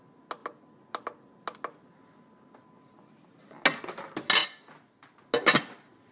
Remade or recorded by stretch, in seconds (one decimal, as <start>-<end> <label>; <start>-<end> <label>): 0.0-6.1 recorded